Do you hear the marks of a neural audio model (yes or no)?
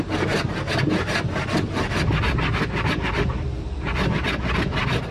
no